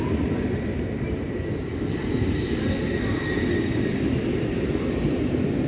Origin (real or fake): fake